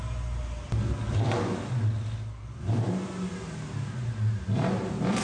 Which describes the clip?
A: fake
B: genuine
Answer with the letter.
B